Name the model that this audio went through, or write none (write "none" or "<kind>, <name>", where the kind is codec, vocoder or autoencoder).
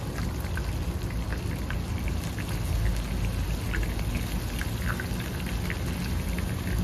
none